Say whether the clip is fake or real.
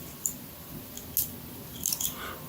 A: real